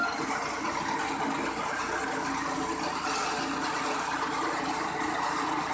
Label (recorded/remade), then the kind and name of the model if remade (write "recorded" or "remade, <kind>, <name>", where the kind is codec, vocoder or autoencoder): recorded